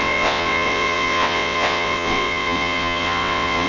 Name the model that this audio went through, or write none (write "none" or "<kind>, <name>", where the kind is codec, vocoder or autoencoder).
vocoder, WaveNeXt